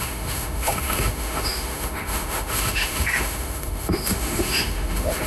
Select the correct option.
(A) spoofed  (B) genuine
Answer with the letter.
A